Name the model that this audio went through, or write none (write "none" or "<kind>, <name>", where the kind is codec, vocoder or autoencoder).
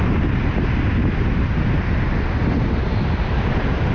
none